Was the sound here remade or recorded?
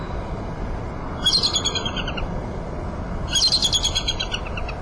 recorded